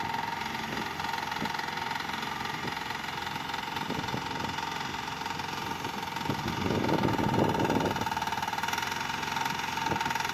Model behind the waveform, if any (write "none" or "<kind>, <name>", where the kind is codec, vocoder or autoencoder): none